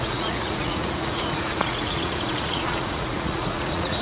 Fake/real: fake